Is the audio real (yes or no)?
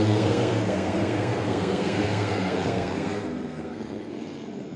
no